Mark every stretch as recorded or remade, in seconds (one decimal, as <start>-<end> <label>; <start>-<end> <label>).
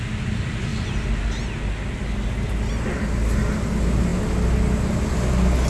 0.0-5.7 recorded